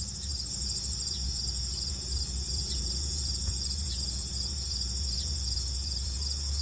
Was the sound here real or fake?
fake